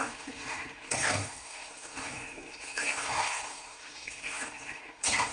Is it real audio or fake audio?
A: fake